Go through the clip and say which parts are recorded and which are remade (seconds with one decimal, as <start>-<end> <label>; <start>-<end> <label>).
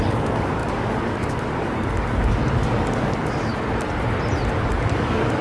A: 0.0-3.5 remade; 3.5-4.6 recorded; 4.6-5.4 remade